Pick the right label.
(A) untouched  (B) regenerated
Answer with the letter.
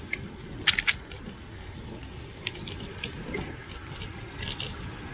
A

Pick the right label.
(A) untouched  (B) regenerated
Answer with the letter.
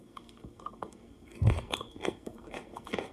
B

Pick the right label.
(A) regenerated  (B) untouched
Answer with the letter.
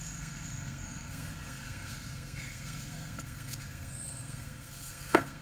A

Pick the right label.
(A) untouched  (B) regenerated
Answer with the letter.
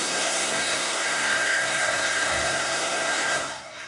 B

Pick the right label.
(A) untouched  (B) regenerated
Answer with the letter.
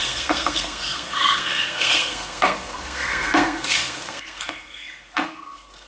B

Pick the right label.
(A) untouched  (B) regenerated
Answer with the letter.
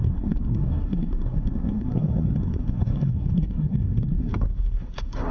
B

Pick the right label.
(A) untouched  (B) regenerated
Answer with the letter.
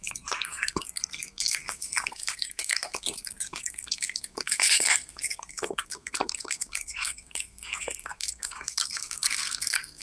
B